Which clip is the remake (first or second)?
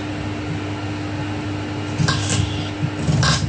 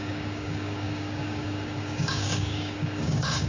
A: second